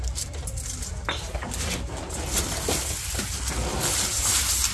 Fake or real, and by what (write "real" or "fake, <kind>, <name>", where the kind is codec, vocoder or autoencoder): real